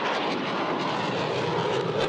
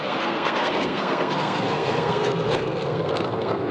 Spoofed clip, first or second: second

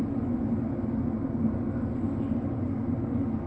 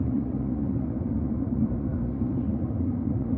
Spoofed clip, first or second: second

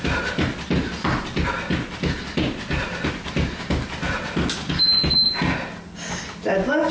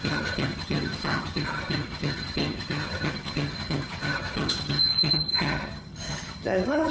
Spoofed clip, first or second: second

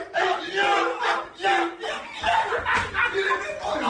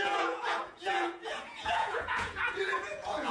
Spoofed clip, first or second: second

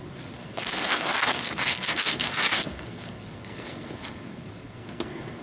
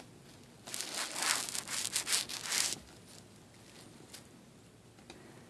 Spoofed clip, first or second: first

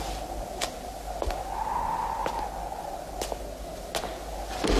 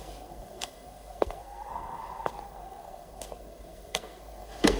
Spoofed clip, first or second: second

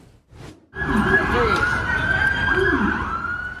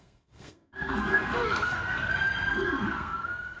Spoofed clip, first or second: second